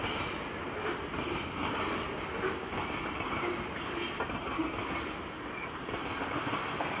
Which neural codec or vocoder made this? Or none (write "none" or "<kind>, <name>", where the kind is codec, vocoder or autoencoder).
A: none